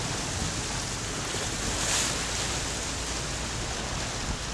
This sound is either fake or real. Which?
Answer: real